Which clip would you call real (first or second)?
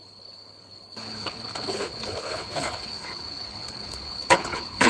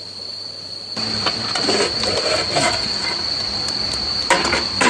second